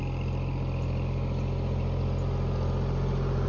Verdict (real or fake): real